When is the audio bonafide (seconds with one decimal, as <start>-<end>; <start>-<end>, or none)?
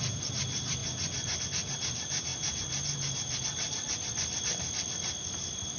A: 0.0-5.8